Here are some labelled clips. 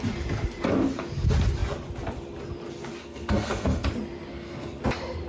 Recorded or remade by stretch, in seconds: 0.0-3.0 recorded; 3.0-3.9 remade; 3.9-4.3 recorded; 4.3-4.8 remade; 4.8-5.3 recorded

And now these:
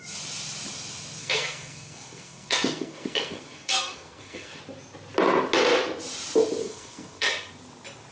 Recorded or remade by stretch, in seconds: 0.0-1.2 recorded; 1.2-4.6 remade; 4.6-6.6 recorded; 6.6-7.3 remade; 7.3-8.1 recorded

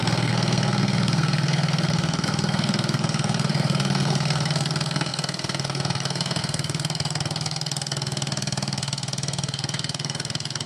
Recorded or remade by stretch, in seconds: 0.0-10.7 remade

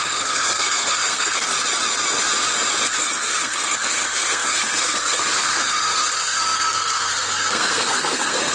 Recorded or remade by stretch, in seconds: 0.0-1.5 remade; 1.5-3.0 recorded; 3.0-8.5 remade